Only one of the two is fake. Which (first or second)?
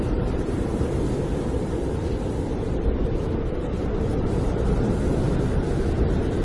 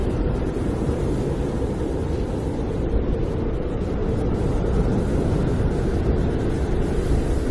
first